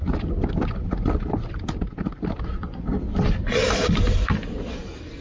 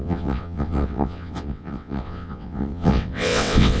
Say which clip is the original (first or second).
first